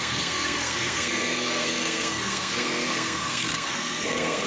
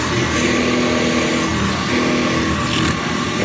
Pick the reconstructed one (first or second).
first